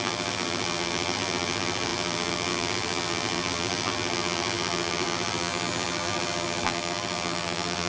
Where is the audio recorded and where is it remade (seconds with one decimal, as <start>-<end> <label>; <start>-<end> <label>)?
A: 0.0-7.9 remade